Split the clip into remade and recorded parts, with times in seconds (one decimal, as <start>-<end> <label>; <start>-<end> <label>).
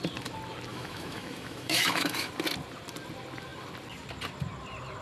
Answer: 0.0-0.7 recorded; 0.7-2.3 remade; 2.3-5.0 recorded